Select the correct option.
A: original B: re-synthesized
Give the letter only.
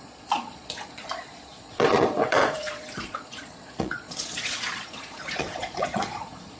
B